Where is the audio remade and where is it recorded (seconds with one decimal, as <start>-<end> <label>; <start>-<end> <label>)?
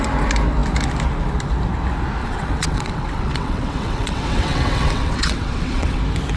0.0-2.2 recorded; 2.2-6.0 remade; 6.0-6.4 recorded